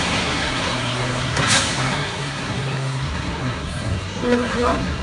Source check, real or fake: fake